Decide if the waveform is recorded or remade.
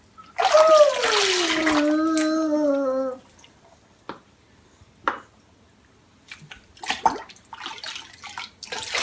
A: recorded